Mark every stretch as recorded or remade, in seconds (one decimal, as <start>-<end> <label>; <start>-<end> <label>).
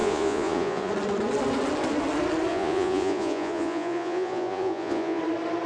0.0-0.9 remade; 0.9-2.5 recorded; 2.5-5.2 remade; 5.2-5.7 recorded